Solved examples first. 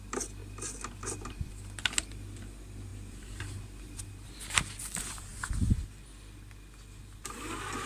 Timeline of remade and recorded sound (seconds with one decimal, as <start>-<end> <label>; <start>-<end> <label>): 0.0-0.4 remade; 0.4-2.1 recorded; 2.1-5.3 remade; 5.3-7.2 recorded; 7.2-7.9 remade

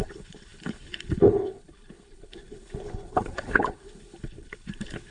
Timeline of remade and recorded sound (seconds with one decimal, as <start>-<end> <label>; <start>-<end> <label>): 0.0-5.1 remade

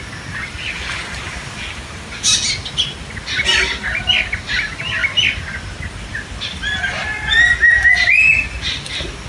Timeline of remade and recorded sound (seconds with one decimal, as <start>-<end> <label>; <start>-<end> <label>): 0.0-9.3 recorded